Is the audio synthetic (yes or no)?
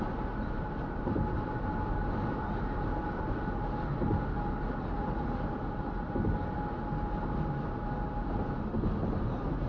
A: no